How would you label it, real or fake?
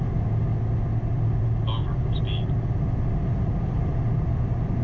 real